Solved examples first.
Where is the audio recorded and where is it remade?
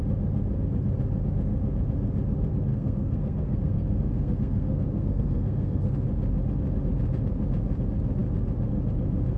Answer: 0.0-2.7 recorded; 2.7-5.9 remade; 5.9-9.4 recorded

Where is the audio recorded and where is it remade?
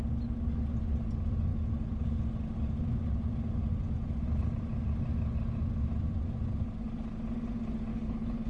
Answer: 0.0-7.9 recorded; 7.9-8.5 remade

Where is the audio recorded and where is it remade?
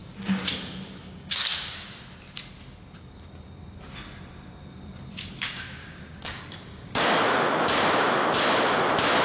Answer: 0.0-0.6 remade; 0.6-1.0 recorded; 1.0-2.0 remade; 2.0-5.1 recorded; 5.1-8.5 remade; 8.5-9.2 recorded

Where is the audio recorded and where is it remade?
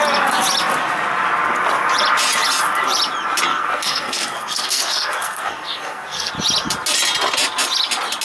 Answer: 0.0-3.5 recorded; 3.5-6.3 remade; 6.3-8.2 recorded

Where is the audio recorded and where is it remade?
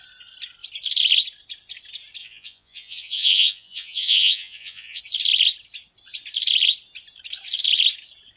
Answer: 0.0-2.2 recorded; 2.2-5.0 remade; 5.0-8.4 recorded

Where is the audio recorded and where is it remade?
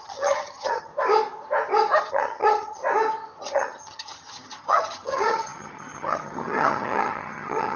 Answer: 0.0-0.9 remade; 0.9-2.1 recorded; 2.1-2.8 remade; 2.8-3.4 recorded; 3.4-7.8 remade